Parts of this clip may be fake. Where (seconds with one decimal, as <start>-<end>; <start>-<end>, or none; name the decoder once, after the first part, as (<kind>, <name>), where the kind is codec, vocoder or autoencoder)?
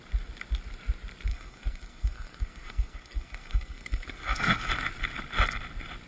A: 1.3-4.7 (codec, SNAC)